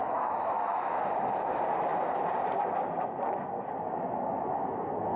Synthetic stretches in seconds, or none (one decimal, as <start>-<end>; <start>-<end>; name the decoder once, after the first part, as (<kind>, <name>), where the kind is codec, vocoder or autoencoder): 0.0-0.9 (autoencoder, DAC-VAE)